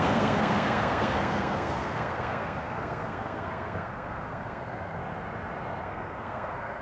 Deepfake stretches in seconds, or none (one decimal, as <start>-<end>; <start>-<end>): 0.0-5.0; 5.8-6.8